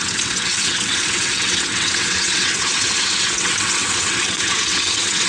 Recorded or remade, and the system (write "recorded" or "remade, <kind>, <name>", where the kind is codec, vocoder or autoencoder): remade, vocoder, WaveNeXt